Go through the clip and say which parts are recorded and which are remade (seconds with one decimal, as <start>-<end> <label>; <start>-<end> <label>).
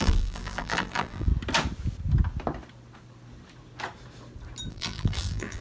0.0-1.3 remade; 1.3-4.7 recorded; 4.7-5.6 remade